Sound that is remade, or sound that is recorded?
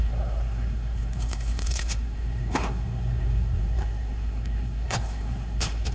remade